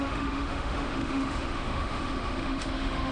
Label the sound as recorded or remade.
remade